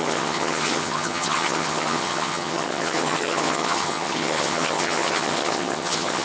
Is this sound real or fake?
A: fake